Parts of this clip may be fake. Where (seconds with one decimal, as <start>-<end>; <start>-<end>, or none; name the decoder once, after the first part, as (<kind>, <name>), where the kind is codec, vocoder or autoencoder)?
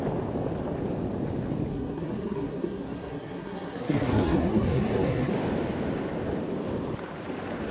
1.7-5.3 (codec, SNAC)